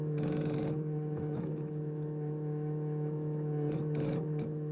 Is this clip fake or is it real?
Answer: fake